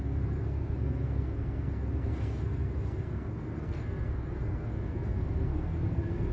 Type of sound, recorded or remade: remade